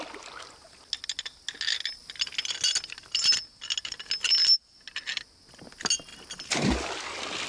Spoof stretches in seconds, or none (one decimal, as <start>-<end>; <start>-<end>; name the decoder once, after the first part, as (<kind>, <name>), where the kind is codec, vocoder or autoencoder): none